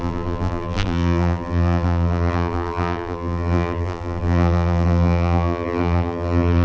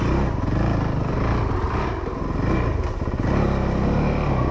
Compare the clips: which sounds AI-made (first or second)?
first